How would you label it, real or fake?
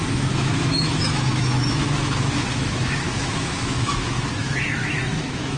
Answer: fake